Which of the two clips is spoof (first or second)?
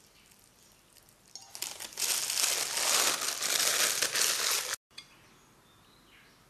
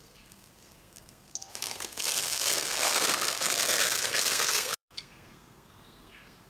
second